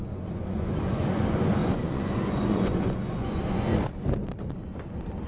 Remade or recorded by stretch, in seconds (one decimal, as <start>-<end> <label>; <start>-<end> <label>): 0.0-3.7 remade; 3.7-5.3 recorded